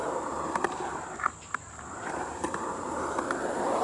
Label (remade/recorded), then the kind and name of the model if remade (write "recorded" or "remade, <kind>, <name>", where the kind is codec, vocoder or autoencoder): remade, vocoder, BigVGAN v2